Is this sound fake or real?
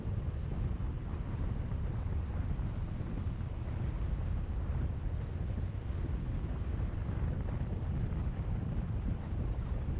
real